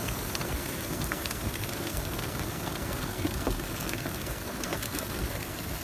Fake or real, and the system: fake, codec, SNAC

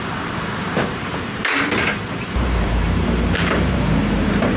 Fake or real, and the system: fake, vocoder, BigVGAN v2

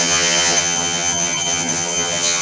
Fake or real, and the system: fake, vocoder, HiFi-GAN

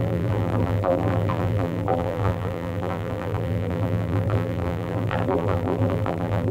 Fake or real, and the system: fake, vocoder, BigVGAN v2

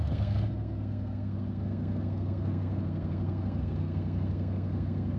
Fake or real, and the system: fake, codec, SNAC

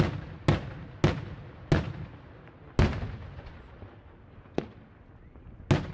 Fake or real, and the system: real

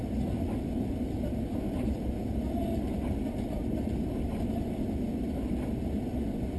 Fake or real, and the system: real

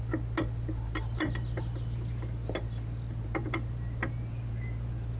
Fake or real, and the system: real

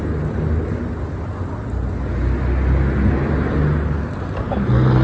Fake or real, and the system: real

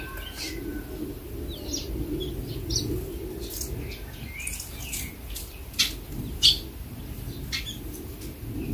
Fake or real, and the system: real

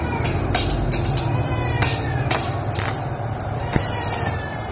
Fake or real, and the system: fake, vocoder, BigVGAN v2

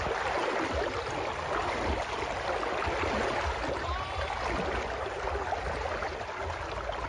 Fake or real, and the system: real